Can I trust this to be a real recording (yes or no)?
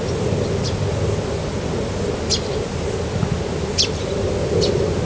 yes